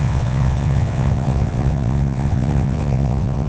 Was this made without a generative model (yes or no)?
no